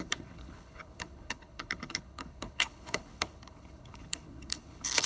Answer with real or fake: fake